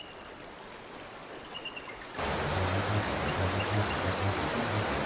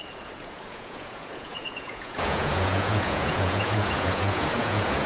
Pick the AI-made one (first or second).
second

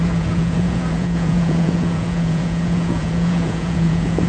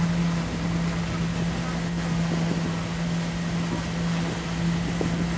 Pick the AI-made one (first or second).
first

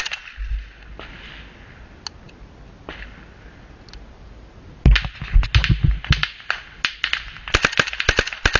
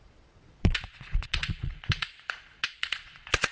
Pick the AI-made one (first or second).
second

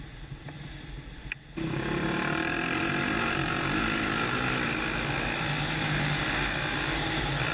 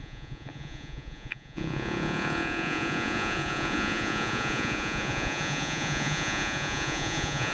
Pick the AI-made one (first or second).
second